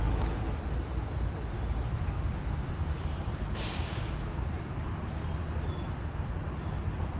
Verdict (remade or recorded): recorded